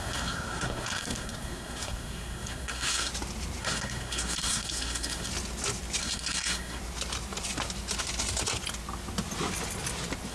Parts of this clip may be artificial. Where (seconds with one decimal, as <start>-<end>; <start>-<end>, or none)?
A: 0.0-3.1; 3.6-5.3; 6.0-6.8